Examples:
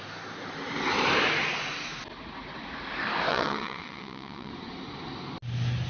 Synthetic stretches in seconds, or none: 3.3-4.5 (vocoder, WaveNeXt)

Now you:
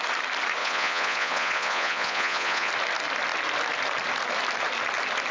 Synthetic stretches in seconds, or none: 0.6-2.7 (vocoder, Vocos)

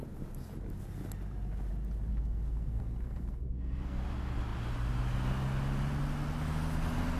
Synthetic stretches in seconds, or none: 2.1-4.0 (codec, SNAC)